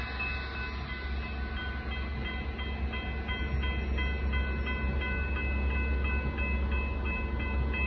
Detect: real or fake real